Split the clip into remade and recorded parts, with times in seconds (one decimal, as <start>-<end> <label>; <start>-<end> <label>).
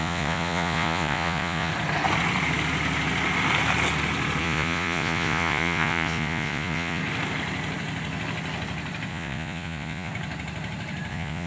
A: 0.0-1.7 remade; 1.7-4.4 recorded; 4.4-7.0 remade; 7.0-9.1 recorded; 9.1-10.1 remade; 10.1-11.1 recorded; 11.1-11.5 remade